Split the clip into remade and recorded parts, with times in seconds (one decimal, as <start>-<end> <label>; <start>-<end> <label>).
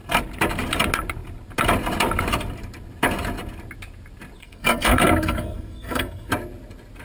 0.0-4.4 recorded; 4.4-6.3 remade; 6.3-7.0 recorded